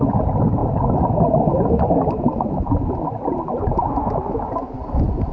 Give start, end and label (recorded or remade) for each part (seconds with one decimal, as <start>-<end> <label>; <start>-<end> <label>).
0.0-5.3 recorded